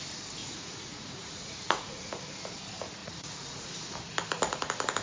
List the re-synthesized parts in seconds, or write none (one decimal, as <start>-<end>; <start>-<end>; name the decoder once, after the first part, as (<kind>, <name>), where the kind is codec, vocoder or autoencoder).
0.4-2.1 (vocoder, Vocos); 3.0-3.7